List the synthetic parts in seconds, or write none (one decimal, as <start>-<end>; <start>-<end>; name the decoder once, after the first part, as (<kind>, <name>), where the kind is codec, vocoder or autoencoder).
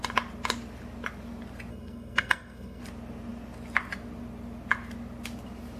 1.7-2.8 (codec, SNAC)